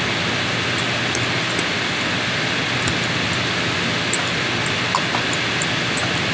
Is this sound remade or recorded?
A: recorded